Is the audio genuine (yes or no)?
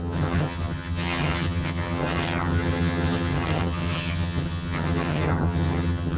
no